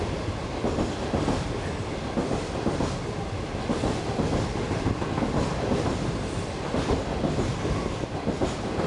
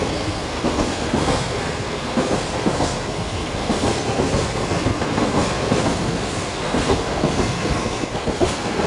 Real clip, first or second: first